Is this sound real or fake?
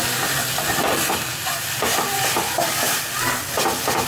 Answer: real